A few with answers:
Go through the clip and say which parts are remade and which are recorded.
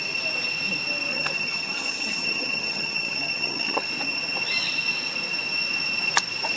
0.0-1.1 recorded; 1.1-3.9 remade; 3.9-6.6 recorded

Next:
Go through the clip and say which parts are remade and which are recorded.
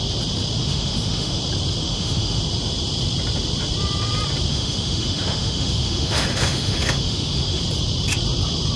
0.0-0.6 recorded; 0.6-1.4 remade; 1.4-1.8 recorded; 1.8-2.4 remade; 2.4-4.5 recorded; 4.5-7.6 remade; 7.6-8.8 recorded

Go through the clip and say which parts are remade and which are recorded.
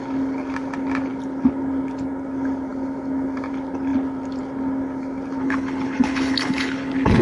0.0-5.4 recorded; 5.4-7.2 remade